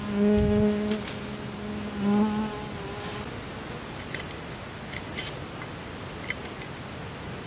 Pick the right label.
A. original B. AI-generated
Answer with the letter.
A